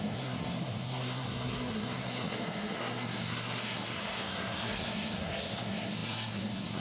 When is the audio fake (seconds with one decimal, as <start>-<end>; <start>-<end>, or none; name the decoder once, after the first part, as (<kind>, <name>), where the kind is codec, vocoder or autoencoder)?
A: 0.0-6.8 (codec, SNAC)